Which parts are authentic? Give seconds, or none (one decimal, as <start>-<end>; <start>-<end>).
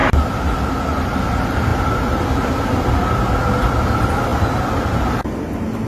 0.0-5.9